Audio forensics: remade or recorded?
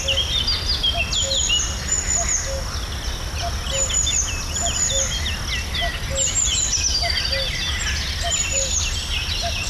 recorded